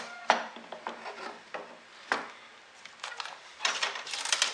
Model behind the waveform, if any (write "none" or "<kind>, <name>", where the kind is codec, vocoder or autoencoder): none